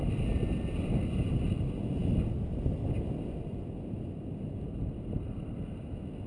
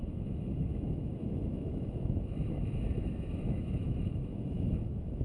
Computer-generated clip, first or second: second